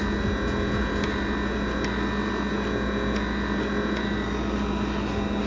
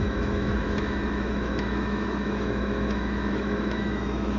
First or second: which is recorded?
first